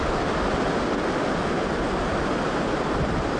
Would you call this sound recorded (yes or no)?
yes